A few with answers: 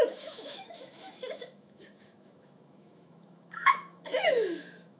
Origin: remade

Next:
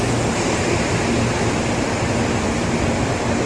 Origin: remade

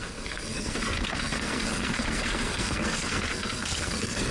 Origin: remade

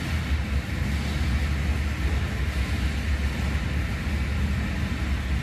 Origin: recorded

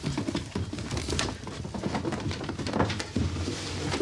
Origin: recorded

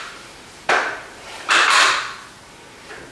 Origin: recorded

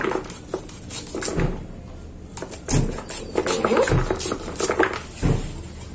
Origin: recorded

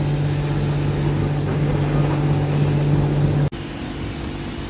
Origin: recorded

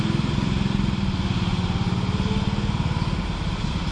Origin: recorded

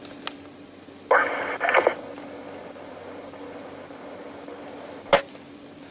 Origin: recorded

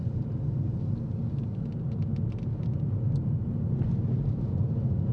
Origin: recorded